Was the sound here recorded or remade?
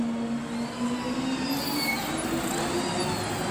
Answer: recorded